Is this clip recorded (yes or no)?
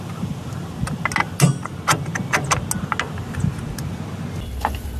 yes